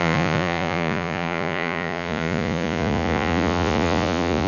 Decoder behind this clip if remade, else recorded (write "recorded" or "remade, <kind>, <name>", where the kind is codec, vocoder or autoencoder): remade, vocoder, Vocos